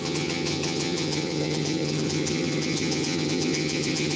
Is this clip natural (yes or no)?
no